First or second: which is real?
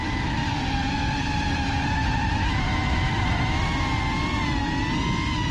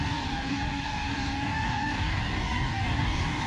first